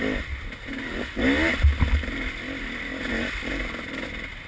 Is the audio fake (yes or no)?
no